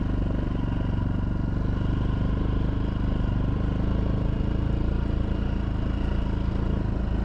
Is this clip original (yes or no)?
yes